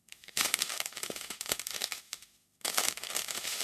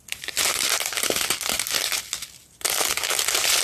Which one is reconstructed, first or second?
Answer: first